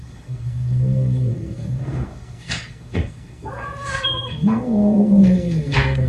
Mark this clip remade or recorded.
remade